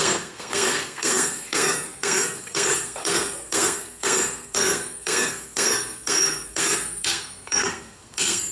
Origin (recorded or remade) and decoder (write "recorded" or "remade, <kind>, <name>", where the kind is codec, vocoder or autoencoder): remade, codec, SNAC